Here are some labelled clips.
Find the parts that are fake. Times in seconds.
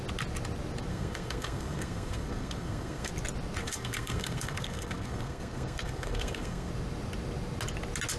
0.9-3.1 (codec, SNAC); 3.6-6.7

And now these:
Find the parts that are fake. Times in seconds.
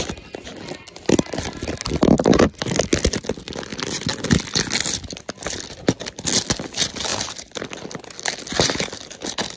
none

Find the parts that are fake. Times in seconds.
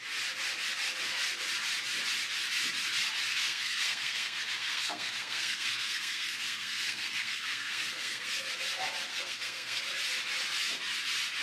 3.3-8.5 (codec, SNAC); 9.1-9.8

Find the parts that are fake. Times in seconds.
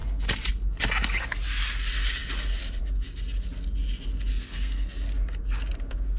4.3-4.9 (codec, SNAC)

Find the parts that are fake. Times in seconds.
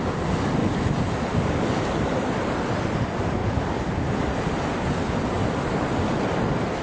none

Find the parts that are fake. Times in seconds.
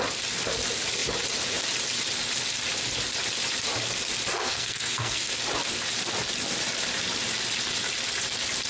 4.3-5.3 (codec, SNAC)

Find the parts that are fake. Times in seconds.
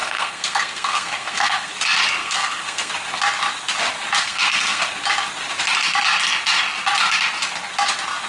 0.0-1.7 (codec, SNAC); 2.2-2.9; 4.2-4.8